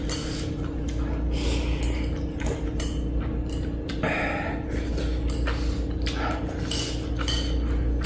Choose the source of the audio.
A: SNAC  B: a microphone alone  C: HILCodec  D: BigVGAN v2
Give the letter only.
B